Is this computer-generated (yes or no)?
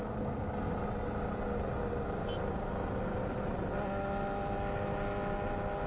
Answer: no